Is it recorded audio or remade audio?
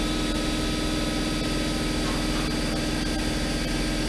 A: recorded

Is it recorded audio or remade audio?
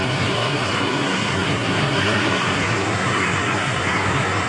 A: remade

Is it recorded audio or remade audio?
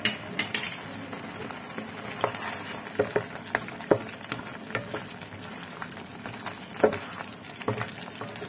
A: recorded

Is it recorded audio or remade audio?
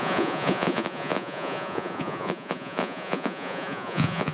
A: remade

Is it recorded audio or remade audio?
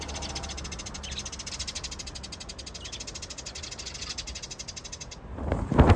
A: recorded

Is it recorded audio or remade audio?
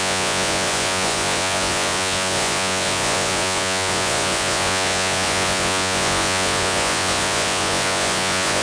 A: remade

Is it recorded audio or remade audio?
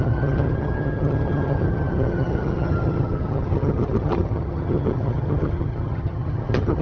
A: remade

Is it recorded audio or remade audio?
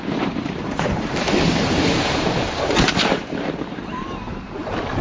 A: remade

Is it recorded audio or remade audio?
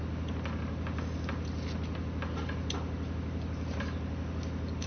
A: recorded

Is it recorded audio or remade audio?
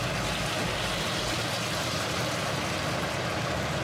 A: recorded